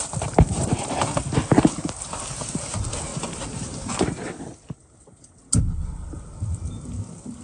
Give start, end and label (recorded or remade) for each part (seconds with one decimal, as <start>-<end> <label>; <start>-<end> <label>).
0.0-7.4 recorded